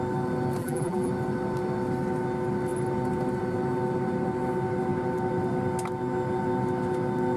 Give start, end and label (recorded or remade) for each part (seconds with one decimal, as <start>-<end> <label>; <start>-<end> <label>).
0.0-0.6 recorded; 0.6-1.1 remade; 1.1-7.4 recorded